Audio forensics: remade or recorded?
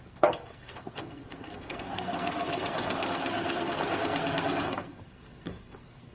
remade